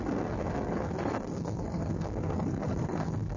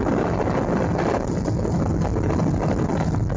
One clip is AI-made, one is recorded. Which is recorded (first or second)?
second